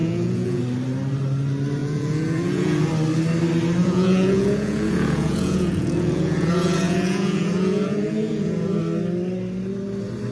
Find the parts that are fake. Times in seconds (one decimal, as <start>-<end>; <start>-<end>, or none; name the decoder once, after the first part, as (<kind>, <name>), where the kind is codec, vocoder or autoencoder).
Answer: 0.0-0.6 (vocoder, Vocos); 1.8-2.9; 3.8-8.8